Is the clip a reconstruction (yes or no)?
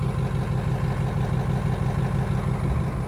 no